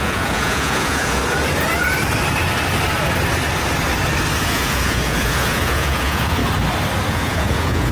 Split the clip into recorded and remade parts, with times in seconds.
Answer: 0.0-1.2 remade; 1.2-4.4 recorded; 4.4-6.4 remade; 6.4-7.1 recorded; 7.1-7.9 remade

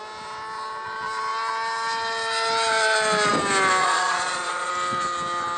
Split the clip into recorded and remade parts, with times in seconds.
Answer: 0.0-3.8 recorded; 3.8-4.7 remade; 4.7-5.6 recorded

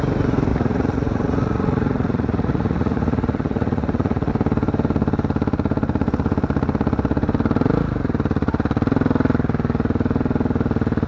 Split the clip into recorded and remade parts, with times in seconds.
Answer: 0.0-0.5 recorded; 0.5-4.3 remade; 4.3-11.1 recorded

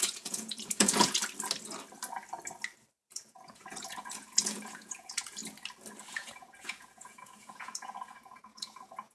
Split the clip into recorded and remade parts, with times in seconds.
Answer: 0.0-1.2 remade; 1.2-3.1 recorded; 3.1-5.4 remade; 5.4-6.1 recorded; 6.1-9.1 remade

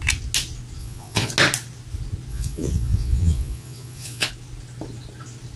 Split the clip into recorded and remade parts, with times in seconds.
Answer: 0.0-0.8 recorded; 0.8-1.3 remade; 1.3-2.3 recorded; 2.3-4.3 remade; 4.3-5.6 recorded

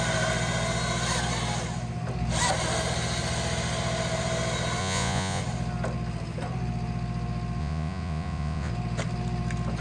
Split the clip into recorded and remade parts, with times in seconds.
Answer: 0.0-4.8 recorded; 4.8-5.4 remade; 5.4-7.6 recorded; 7.6-8.7 remade; 8.7-9.8 recorded